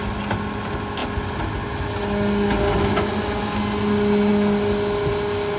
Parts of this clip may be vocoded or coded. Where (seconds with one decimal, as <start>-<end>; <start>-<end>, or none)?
none